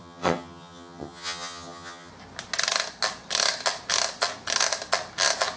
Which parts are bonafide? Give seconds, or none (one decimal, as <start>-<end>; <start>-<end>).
2.1-5.6